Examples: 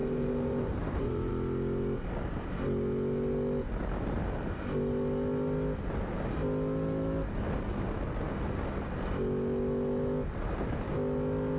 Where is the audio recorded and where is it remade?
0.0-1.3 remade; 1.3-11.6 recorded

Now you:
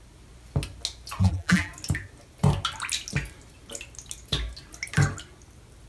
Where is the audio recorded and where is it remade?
0.0-1.2 recorded; 1.2-1.7 remade; 1.7-5.9 recorded

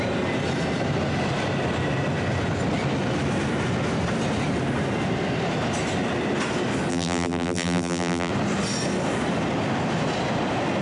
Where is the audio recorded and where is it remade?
0.0-6.9 recorded; 6.9-8.3 remade; 8.3-10.8 recorded

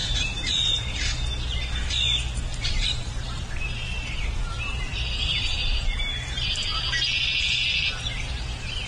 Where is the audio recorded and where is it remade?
0.0-0.8 remade; 0.8-2.5 recorded; 2.5-6.5 remade; 6.5-8.9 recorded

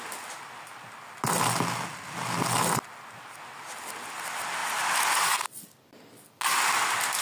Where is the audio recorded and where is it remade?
0.0-7.2 recorded